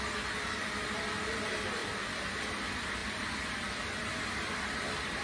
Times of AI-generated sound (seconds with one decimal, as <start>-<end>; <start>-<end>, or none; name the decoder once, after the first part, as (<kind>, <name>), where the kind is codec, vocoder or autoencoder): none